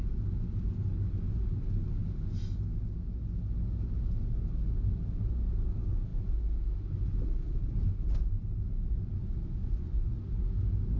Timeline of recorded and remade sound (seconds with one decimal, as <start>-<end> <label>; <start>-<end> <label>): 0.0-9.6 recorded; 9.6-10.1 remade; 10.1-11.0 recorded